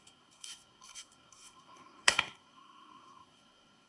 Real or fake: fake